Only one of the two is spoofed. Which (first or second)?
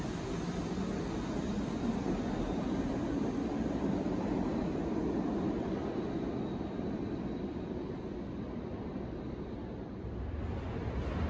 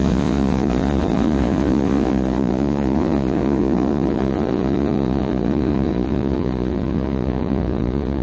second